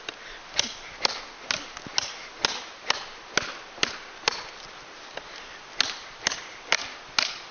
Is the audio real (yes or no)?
yes